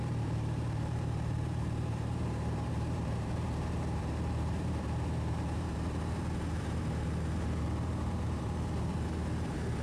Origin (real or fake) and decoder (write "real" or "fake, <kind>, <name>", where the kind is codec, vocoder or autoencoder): fake, vocoder, BigVGAN v2